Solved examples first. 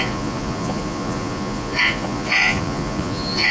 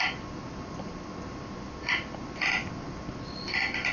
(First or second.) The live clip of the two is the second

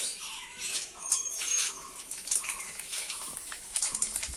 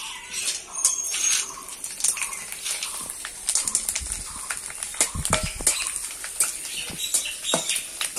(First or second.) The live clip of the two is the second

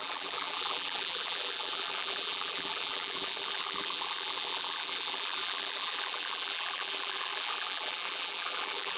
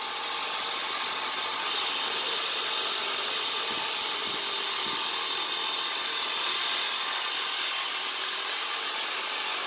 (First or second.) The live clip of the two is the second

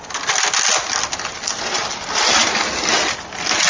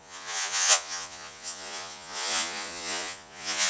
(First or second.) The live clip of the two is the first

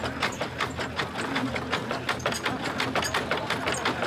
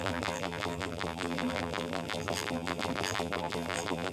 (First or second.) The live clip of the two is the first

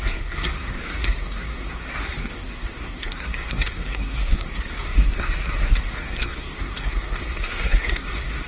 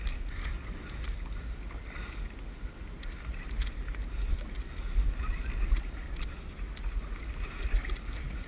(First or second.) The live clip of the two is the second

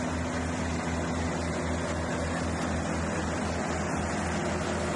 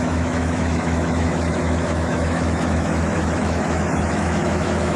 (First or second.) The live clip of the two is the first